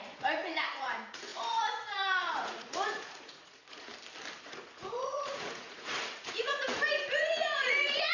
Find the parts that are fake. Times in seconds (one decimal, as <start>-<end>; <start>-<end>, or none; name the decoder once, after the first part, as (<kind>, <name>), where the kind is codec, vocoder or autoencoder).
0.0-3.9 (vocoder, Vocos); 4.4-8.1